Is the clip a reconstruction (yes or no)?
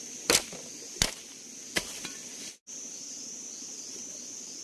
no